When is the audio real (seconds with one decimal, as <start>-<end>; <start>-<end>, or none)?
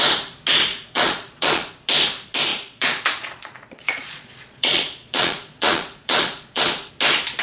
0.0-0.7; 1.7-2.5; 6.9-7.4